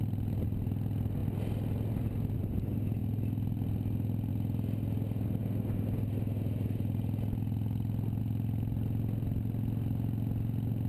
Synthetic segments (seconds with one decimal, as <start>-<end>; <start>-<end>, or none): none